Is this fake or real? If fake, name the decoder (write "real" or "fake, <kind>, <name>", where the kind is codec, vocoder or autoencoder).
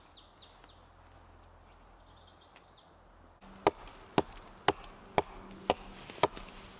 real